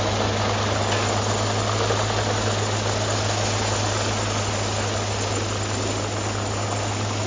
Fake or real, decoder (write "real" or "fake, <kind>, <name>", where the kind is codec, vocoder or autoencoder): real